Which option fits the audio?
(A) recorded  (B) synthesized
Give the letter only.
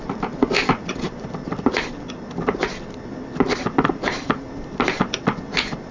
A